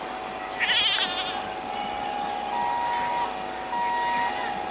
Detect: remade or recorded recorded